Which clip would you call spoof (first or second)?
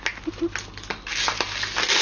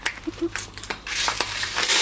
second